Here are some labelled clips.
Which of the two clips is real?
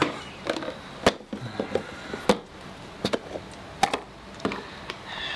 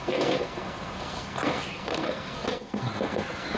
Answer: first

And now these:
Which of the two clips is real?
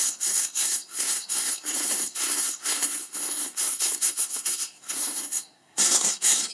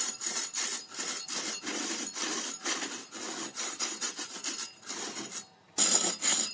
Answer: second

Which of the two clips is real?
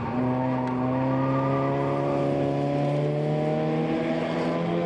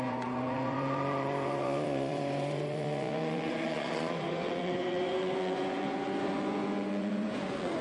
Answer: first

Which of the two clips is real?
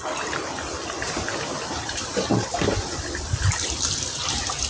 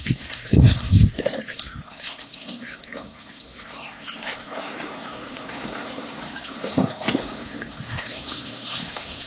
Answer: first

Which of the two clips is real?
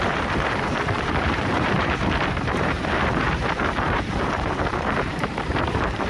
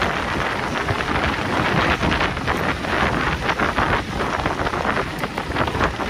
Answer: second